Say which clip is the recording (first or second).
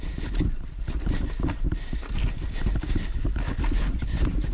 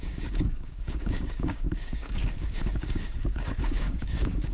first